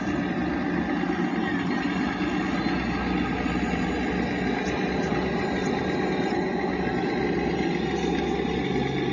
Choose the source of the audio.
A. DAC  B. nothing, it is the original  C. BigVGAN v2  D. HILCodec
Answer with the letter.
B